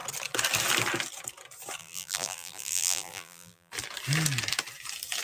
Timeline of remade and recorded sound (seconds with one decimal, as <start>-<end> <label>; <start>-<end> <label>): 0.0-1.8 recorded; 1.8-3.7 remade; 3.7-5.2 recorded